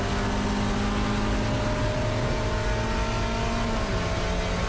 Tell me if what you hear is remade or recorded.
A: recorded